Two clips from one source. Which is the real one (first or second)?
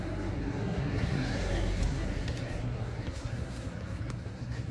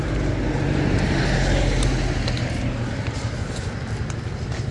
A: second